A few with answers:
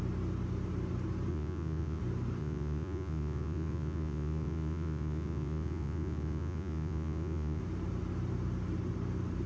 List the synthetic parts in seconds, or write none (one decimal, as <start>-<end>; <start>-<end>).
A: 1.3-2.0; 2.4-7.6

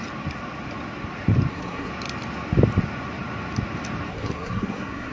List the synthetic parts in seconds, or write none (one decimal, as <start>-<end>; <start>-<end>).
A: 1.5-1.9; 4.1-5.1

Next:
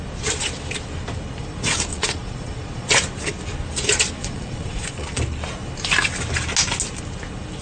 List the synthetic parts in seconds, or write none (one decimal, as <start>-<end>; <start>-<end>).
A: 1.9-2.9; 4.2-5.2

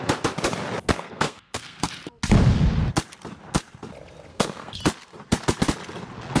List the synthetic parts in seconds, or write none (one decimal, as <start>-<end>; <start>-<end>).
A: 0.9-1.9; 4.3-4.8

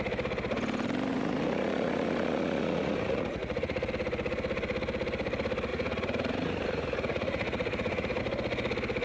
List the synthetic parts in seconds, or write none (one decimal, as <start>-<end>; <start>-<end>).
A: 1.1-3.9; 5.7-8.2